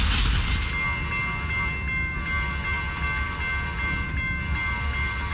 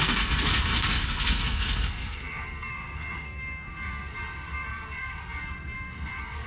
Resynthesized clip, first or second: second